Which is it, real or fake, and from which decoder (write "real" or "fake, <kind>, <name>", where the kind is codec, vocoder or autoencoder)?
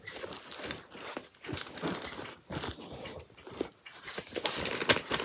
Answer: real